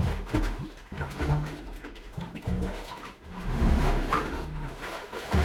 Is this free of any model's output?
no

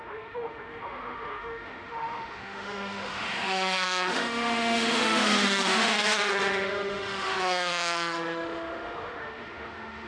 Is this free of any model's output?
no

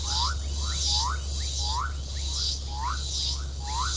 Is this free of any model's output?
yes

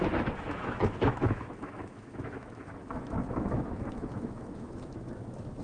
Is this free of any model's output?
no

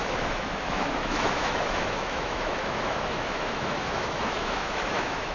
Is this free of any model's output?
no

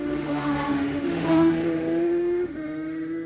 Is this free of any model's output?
no